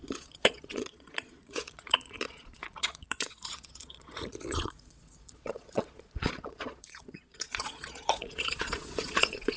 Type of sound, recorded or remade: remade